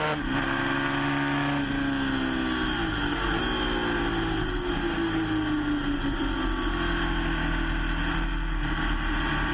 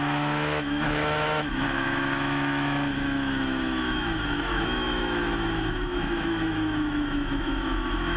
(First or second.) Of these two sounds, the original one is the first